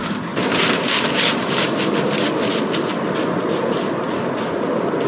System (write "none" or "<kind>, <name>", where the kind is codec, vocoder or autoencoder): none